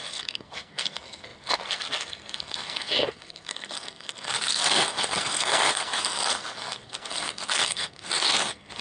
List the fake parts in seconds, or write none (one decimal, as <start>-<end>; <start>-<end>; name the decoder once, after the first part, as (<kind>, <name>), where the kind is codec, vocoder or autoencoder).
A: 0.0-8.8 (codec, SNAC)